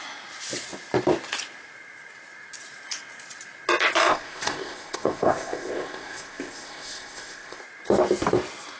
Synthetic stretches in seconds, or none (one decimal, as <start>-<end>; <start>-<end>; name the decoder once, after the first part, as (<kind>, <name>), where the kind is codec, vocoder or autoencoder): 4.1-7.6 (codec, ZipCodec)